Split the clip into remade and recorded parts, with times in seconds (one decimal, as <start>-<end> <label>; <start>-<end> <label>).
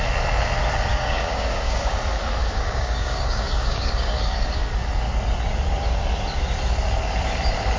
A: 0.0-0.9 recorded; 0.9-2.0 remade; 2.0-2.4 recorded; 2.4-4.7 remade; 4.7-7.8 recorded